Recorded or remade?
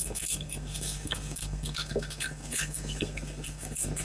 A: remade